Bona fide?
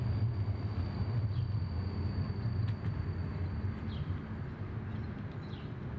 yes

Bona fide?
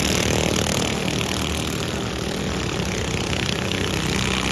no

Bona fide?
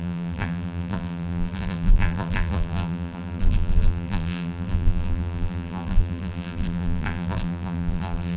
no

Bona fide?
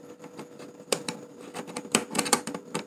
no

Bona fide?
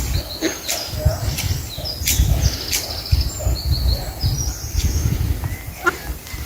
yes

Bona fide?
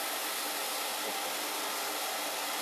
yes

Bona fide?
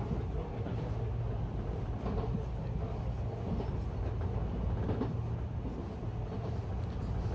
yes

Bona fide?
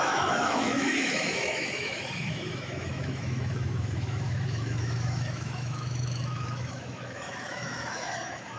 no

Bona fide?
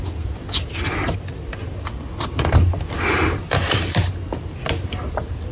yes